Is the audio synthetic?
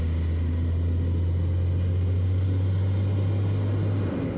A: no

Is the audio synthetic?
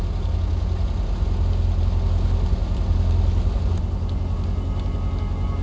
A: no